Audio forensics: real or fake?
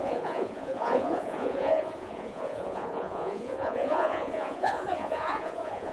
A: fake